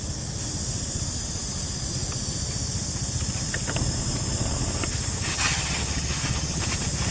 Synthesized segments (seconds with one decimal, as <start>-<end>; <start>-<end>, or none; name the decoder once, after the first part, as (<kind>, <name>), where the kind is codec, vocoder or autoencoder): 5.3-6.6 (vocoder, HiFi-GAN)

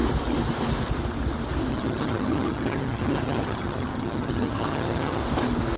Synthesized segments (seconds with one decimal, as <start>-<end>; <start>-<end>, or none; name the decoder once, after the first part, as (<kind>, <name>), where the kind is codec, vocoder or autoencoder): 1.7-5.2 (vocoder, HiFi-GAN)

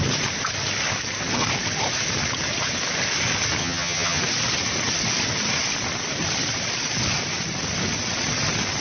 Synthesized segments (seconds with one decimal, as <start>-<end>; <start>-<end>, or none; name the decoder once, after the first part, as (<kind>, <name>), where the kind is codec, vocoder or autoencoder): 3.6-4.2 (vocoder, HiFi-GAN)

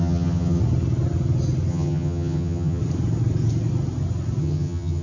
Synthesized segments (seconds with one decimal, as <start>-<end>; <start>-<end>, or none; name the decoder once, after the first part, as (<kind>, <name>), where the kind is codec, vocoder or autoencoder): 0.0-0.6 (vocoder, HiFi-GAN); 1.7-2.8; 4.4-5.0